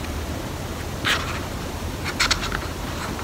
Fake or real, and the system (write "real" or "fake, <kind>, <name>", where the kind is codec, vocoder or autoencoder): fake, vocoder, BigVGAN v2